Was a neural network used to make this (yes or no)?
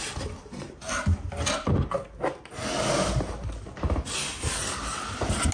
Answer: no